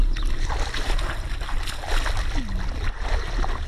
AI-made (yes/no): no